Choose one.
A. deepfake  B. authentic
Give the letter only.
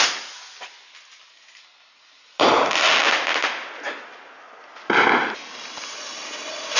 B